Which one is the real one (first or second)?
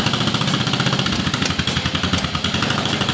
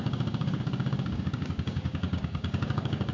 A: first